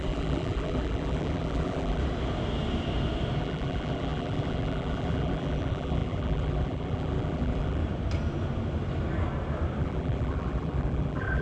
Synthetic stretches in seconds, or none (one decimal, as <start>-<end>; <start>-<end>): 0.0-2.0; 3.4-7.8; 9.8-11.4